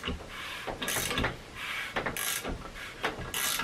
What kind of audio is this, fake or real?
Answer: real